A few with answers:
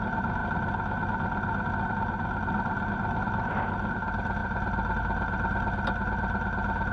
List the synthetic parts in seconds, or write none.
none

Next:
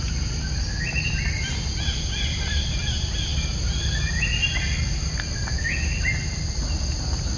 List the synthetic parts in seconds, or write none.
none

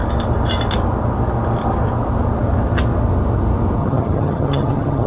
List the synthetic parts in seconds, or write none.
3.8-5.1 (vocoder, HiFi-GAN)